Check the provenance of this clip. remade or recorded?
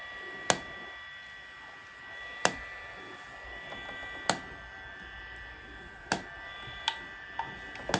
recorded